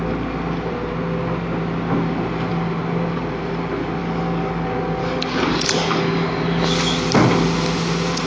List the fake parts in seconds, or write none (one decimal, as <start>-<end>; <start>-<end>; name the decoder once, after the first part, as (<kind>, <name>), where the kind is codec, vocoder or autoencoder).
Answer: 4.0-4.5 (codec, DAC); 5.0-6.4